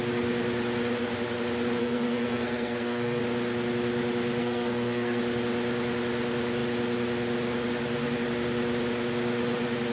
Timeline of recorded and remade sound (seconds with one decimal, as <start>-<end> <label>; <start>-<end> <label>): 0.0-1.8 recorded; 1.8-3.2 remade; 3.2-4.4 recorded; 4.4-5.2 remade; 5.2-9.9 recorded